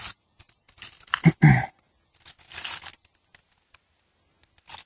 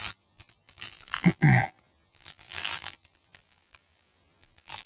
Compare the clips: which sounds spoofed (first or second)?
second